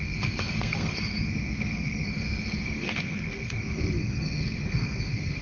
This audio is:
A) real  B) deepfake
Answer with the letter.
B